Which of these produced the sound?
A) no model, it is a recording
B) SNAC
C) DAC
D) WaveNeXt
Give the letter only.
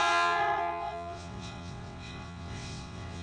D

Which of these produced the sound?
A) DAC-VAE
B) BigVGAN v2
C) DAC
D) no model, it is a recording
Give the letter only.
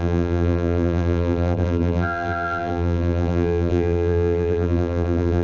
B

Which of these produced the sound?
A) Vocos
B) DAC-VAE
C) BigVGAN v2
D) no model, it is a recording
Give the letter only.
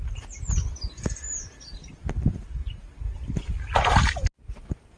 D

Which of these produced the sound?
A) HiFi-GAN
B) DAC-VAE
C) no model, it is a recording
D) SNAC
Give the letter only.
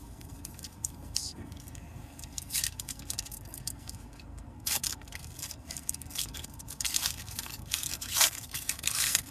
D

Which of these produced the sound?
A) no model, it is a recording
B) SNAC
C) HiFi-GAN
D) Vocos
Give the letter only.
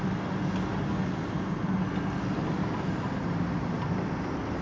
A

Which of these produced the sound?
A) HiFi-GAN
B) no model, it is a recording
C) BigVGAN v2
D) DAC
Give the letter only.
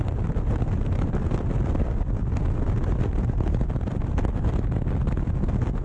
C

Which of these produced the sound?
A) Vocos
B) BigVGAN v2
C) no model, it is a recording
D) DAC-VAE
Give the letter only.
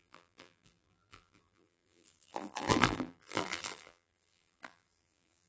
B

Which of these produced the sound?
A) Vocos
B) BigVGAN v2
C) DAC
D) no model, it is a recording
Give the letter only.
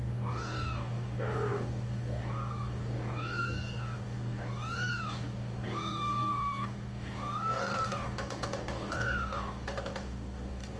C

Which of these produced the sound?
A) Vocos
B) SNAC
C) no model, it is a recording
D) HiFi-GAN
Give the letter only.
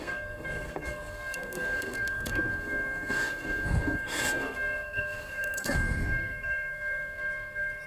B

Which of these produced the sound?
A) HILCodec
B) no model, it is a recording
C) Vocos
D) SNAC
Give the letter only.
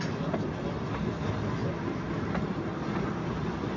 B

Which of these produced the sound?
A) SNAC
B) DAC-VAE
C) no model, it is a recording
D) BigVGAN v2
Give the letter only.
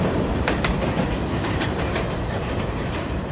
D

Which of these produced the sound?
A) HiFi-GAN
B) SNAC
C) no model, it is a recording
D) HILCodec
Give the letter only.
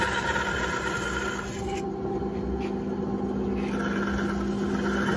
C